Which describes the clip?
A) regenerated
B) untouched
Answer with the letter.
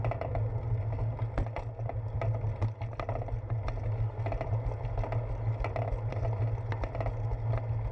B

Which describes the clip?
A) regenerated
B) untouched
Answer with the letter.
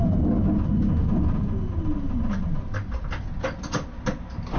B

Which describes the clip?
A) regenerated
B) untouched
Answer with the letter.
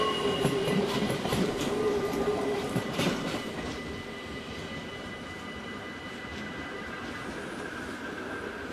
A